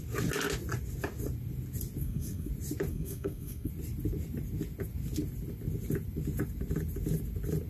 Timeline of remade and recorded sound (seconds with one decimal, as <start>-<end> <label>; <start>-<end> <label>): 0.0-2.0 recorded; 2.0-2.5 remade; 2.5-2.9 recorded; 2.9-3.7 remade; 3.7-7.7 recorded